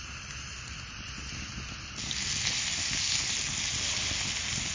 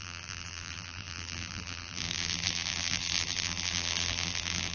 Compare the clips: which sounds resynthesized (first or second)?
second